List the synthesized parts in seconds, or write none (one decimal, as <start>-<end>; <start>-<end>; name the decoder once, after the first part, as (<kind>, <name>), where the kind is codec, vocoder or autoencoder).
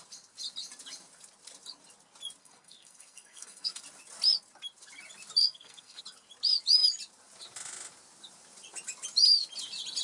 2.4-3.8 (codec, SNAC); 5.4-6.0